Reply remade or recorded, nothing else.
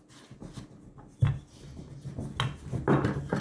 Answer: recorded